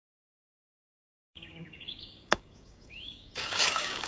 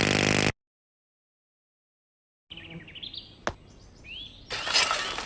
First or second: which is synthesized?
first